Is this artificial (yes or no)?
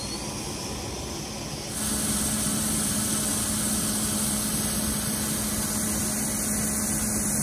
no